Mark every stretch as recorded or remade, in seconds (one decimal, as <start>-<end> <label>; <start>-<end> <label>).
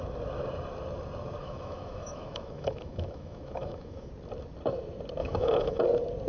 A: 0.0-1.4 recorded; 1.4-4.1 remade; 4.1-5.2 recorded; 5.2-5.8 remade; 5.8-6.3 recorded